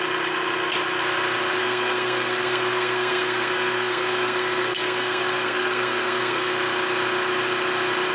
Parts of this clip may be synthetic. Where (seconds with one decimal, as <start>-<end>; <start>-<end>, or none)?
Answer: 1.6-6.5